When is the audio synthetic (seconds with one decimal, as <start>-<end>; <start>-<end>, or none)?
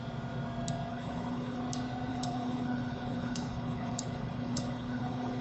0.9-1.6; 2.1-5.4